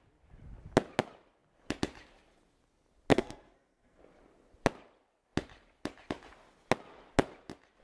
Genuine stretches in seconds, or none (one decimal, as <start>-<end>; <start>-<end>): 0.0-3.1; 4.0-7.8